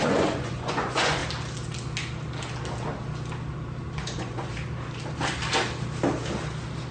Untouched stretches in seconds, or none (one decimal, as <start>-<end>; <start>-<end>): 1.2-4.0; 4.5-6.9